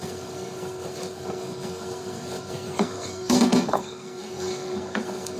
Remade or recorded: remade